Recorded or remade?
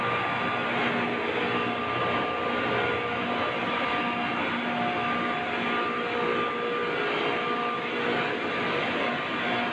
recorded